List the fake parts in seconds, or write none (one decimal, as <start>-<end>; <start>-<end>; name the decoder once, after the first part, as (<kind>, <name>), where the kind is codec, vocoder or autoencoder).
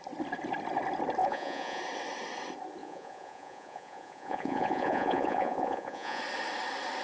1.2-1.8 (vocoder, Vocos); 2.8-6.2